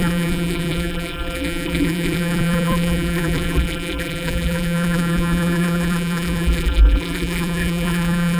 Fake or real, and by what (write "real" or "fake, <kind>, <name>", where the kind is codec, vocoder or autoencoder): fake, vocoder, BigVGAN v2